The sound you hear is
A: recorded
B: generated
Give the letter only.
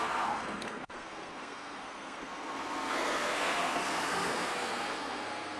B